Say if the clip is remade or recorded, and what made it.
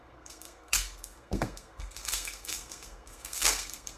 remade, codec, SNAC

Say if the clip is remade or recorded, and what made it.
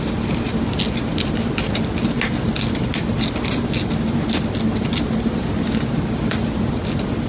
recorded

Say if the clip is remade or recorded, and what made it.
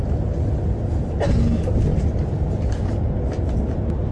recorded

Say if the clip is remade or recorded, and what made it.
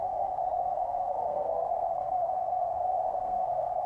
remade, codec, SNAC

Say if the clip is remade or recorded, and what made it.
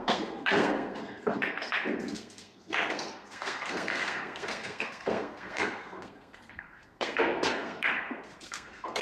remade, codec, SNAC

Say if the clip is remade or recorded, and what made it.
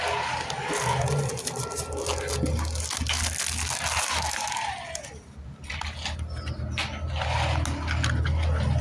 recorded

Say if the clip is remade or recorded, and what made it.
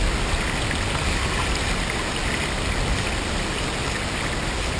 recorded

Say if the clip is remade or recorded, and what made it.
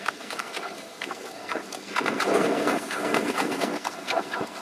remade, codec, SNAC